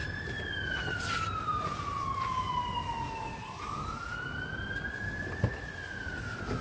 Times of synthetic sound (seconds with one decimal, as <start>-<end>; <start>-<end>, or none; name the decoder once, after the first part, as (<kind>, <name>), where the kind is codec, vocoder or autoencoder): none